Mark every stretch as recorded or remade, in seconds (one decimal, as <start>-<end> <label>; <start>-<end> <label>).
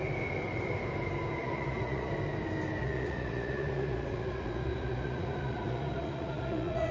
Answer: 0.0-1.4 recorded; 1.4-2.1 remade; 2.1-2.8 recorded; 2.8-6.9 remade